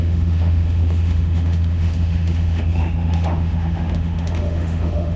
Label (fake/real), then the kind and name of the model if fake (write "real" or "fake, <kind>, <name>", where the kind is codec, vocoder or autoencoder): fake, autoencoder, DAC-VAE